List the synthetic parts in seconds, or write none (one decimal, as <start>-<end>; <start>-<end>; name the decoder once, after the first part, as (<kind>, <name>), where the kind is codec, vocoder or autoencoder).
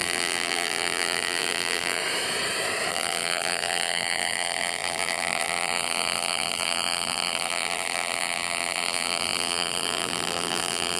0.0-2.0 (vocoder, BigVGAN v2); 2.9-11.0